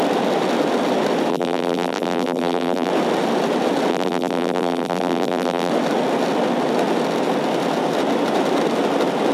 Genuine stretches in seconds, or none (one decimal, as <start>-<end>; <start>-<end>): 0.0-1.3; 2.9-3.9; 5.7-9.3